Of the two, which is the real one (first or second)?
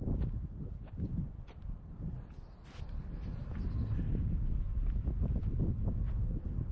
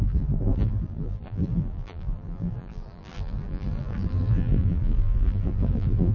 first